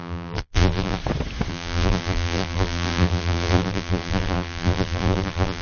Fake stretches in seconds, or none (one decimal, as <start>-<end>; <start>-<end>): 0.0-1.0; 1.5-5.6